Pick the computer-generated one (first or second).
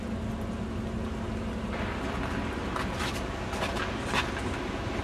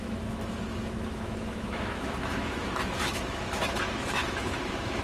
second